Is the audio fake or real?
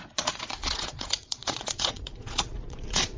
fake